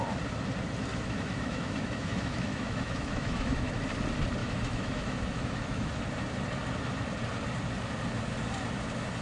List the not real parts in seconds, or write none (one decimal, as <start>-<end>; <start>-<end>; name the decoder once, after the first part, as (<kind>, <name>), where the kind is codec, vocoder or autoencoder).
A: 0.9-3.8 (autoencoder, DAC-VAE); 4.4-5.9